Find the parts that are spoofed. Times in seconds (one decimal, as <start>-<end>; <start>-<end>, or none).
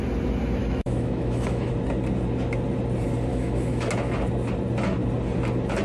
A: 0.6-1.7; 3.3-3.9